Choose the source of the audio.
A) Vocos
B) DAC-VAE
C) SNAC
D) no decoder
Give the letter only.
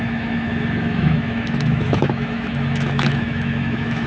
B